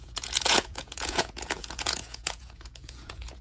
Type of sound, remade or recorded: remade